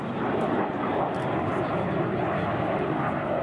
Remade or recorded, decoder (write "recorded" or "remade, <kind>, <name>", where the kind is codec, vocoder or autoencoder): recorded